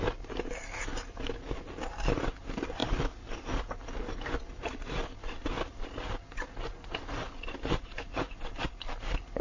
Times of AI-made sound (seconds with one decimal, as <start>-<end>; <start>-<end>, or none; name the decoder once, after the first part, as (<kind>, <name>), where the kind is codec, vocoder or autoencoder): none